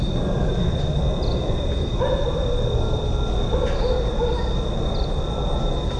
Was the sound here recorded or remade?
recorded